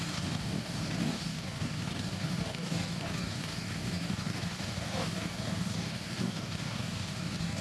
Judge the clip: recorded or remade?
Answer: remade